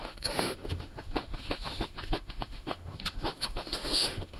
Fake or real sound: fake